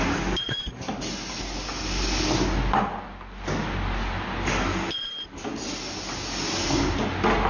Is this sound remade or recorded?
recorded